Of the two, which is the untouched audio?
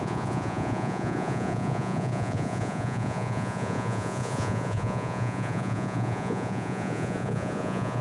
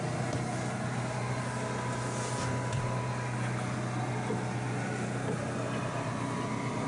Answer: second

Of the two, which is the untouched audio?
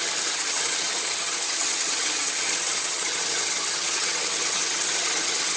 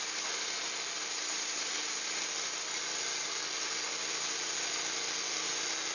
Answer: second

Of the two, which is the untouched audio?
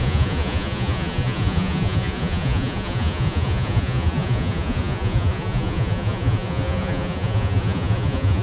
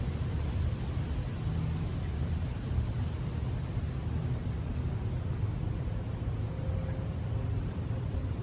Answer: second